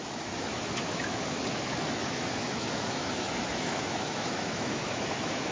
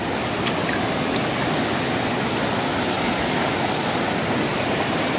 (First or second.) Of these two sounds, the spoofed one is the first